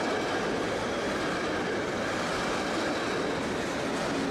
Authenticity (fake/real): real